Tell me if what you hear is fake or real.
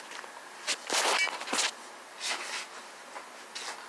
real